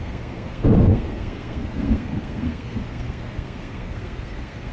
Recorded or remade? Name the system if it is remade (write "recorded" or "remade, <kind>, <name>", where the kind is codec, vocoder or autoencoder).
remade, codec, SNAC